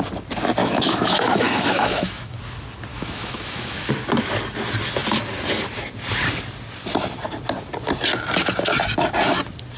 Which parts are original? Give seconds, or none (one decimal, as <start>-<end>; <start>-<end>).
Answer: 0.0-0.6; 2.4-2.9; 3.9-9.8